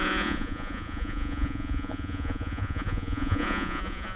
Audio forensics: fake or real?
fake